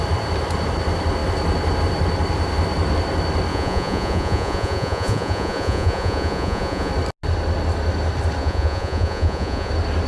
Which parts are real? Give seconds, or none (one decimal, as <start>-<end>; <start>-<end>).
0.0-3.5; 6.9-8.4; 9.7-10.1